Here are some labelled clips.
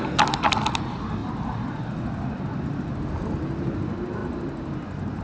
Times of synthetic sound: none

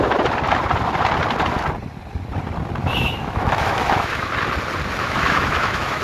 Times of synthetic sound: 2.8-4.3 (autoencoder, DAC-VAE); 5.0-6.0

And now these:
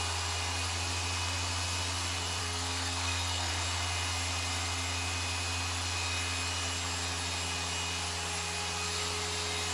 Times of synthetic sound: 2.4-3.5 (codec, SNAC)

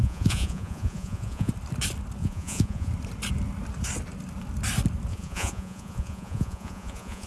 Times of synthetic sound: 0.0-1.5 (vocoder, Vocos); 2.2-2.9; 5.1-7.3